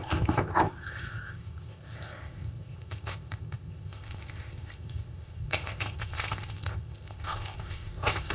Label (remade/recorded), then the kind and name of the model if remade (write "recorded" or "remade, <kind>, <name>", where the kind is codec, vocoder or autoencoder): remade, codec, ZipCodec